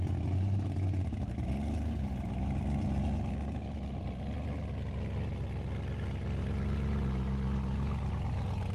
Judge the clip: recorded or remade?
recorded